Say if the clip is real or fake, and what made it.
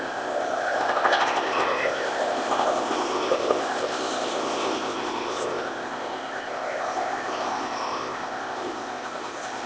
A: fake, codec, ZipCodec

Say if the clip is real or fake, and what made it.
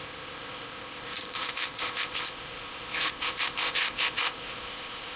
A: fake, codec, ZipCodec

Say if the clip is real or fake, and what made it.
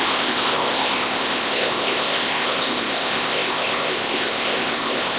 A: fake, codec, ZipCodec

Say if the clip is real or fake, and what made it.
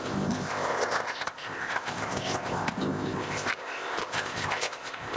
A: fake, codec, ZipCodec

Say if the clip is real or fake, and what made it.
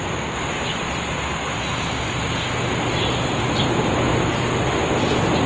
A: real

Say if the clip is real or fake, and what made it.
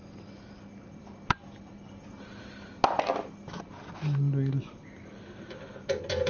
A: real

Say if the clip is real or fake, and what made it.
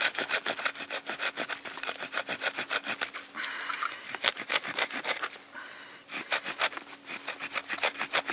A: real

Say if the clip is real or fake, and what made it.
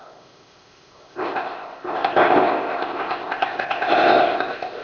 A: fake, codec, ZipCodec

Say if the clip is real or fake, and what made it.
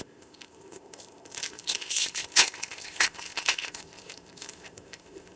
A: fake, codec, ZipCodec